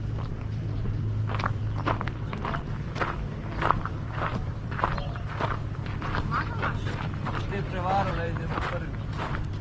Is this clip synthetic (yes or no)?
yes